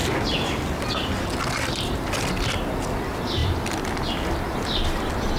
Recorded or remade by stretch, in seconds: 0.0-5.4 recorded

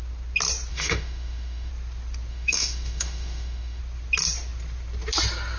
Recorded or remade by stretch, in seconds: 0.0-0.7 recorded; 0.7-1.7 remade; 1.7-2.3 recorded; 2.3-3.8 remade; 3.8-5.6 recorded

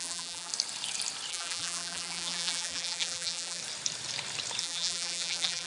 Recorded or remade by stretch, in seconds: 0.0-0.5 remade; 0.5-1.3 recorded; 1.3-3.6 remade; 3.6-4.6 recorded; 4.6-5.7 remade

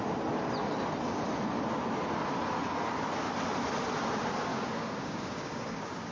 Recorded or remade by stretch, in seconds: 0.0-4.5 recorded; 4.5-6.1 remade

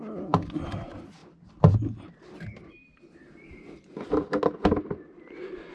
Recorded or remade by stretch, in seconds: 0.0-5.7 recorded